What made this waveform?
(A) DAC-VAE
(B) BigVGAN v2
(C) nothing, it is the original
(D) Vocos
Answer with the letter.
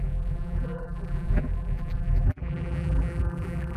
B